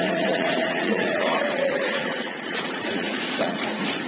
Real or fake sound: fake